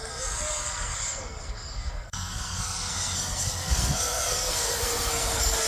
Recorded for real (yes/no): no